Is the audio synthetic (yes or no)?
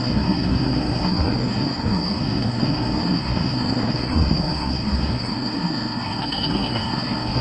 yes